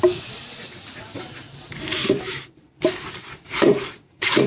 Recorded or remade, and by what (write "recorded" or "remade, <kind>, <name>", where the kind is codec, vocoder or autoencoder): remade, vocoder, BigVGAN v2